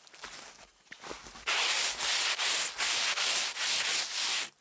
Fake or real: real